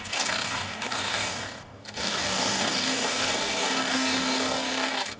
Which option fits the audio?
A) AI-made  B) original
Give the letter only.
A